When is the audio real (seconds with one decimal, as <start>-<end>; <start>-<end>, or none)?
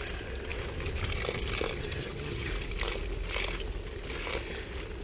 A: 0.0-1.8; 2.5-5.0